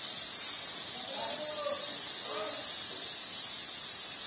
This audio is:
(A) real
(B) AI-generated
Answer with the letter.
A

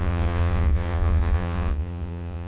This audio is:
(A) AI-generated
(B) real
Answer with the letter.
A